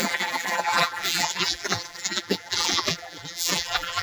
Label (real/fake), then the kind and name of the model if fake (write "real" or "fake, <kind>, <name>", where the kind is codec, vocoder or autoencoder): fake, vocoder, BigVGAN v2